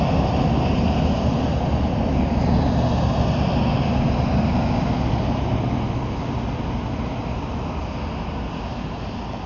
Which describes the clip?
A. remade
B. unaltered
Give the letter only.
B